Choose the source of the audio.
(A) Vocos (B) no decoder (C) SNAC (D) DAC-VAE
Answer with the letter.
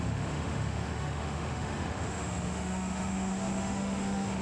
D